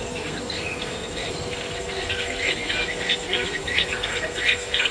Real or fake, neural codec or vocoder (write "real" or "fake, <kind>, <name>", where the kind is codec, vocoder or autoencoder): fake, codec, SNAC